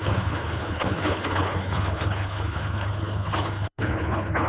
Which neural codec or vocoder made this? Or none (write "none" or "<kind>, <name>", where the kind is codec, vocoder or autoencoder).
codec, HILCodec